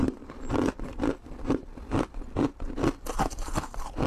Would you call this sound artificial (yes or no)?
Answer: no